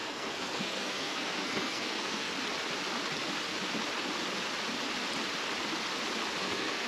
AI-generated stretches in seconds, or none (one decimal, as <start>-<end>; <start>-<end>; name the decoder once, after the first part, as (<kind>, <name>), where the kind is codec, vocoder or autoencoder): 0.0-2.3 (codec, SNAC); 6.4-6.9